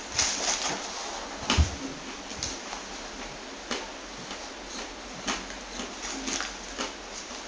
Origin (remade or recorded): recorded